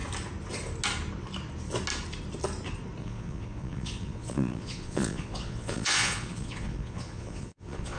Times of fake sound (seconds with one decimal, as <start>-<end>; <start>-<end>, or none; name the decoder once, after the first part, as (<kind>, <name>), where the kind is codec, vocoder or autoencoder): 3.0-8.0 (vocoder, Vocos)